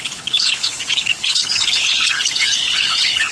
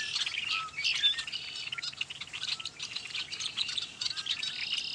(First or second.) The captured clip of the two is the second